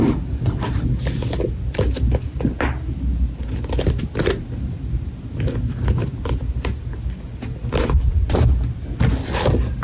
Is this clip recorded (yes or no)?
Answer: yes